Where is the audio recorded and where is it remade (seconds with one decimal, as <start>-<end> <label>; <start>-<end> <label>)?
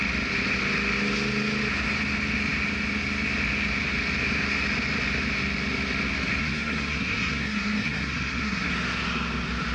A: 0.0-6.4 recorded; 6.4-8.7 remade; 8.7-9.7 recorded